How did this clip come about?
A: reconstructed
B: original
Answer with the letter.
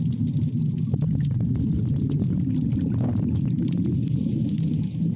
B